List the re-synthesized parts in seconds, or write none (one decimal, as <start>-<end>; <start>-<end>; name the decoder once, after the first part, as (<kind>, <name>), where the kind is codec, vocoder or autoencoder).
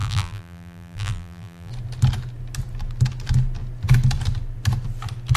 0.0-1.7 (vocoder, BigVGAN v2)